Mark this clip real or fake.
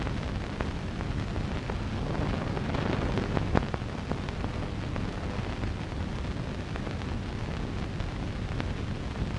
real